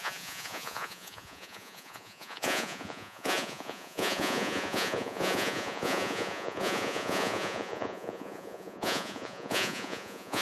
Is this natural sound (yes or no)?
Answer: no